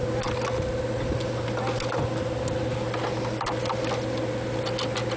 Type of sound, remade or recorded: recorded